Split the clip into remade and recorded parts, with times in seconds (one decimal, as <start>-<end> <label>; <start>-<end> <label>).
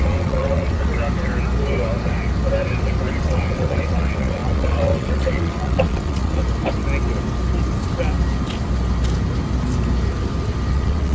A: 0.0-0.9 remade; 0.9-3.2 recorded; 3.2-6.4 remade; 6.4-10.7 recorded; 10.7-11.1 remade